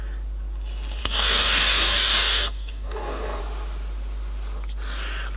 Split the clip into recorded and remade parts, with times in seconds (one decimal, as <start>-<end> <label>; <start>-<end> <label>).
0.0-1.0 recorded; 1.0-3.4 remade; 3.4-5.4 recorded